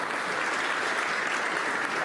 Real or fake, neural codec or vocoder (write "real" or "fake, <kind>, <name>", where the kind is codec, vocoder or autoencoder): real